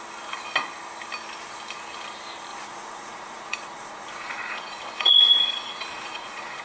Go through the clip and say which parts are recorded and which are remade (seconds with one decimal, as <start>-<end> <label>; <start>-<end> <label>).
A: 0.0-2.5 recorded; 2.5-6.6 remade